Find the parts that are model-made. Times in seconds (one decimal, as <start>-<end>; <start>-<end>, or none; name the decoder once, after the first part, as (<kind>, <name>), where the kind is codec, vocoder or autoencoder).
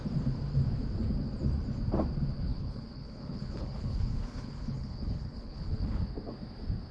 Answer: 2.5-6.0 (codec, HILCodec)